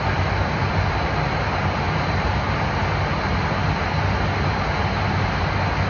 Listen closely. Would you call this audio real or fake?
real